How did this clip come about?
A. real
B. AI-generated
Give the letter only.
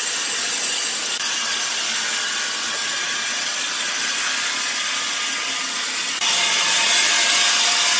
A